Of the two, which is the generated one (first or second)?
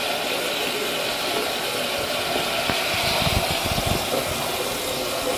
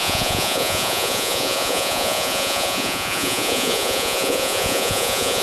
second